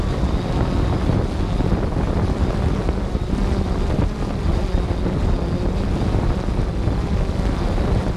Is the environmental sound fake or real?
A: real